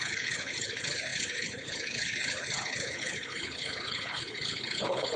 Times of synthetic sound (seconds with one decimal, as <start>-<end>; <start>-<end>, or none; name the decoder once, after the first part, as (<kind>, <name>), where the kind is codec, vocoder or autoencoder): 0.0-5.2 (codec, HILCodec)